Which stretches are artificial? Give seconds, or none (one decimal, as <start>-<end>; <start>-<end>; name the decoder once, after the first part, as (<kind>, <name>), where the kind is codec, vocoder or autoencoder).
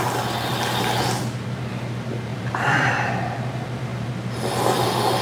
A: 2.3-3.1 (vocoder, BigVGAN v2)